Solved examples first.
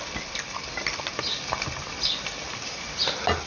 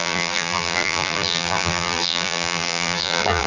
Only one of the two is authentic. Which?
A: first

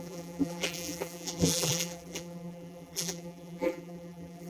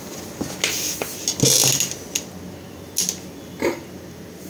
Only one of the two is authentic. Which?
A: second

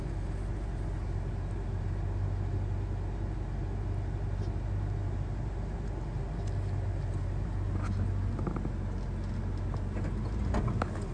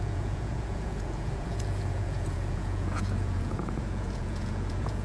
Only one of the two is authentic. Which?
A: first